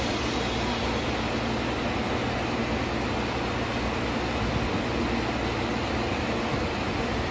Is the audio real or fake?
real